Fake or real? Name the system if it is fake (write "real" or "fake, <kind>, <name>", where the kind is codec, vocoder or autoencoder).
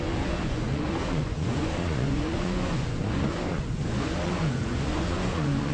fake, vocoder, Vocos